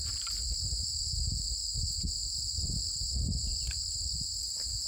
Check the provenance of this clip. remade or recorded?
remade